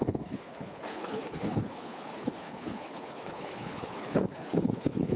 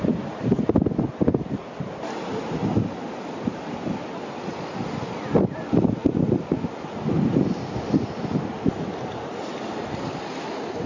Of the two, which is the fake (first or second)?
first